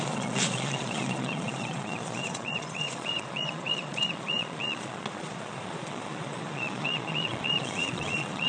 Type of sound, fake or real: fake